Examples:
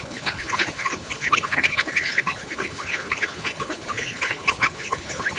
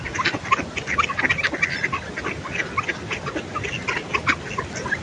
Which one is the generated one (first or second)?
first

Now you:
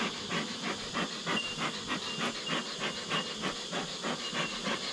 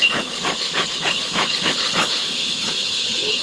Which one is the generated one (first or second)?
second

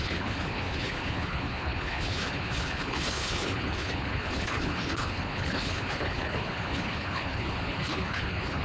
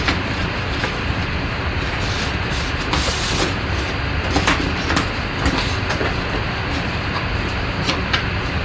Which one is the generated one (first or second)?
first